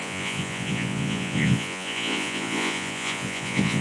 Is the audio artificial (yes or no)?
yes